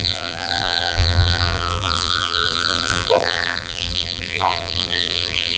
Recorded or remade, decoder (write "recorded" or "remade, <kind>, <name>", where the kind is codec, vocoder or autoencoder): remade, vocoder, BigVGAN v2